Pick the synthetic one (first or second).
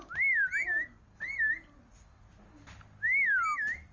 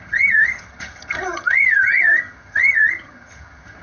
second